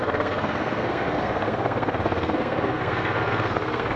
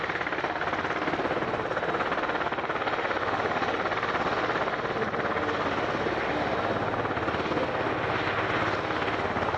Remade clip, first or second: first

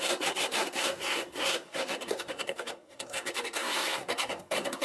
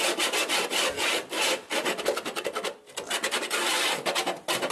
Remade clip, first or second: first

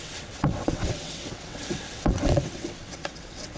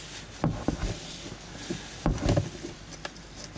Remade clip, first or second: first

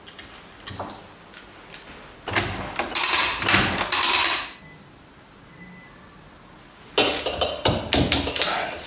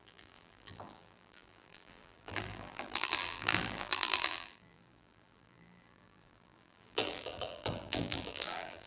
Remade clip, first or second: second